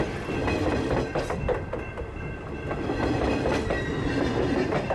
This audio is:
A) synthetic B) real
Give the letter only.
B